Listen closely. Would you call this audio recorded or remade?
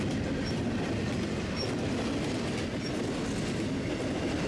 recorded